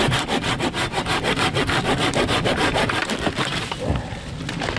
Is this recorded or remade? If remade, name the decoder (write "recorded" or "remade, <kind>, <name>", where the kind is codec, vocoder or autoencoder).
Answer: remade, vocoder, BigVGAN v2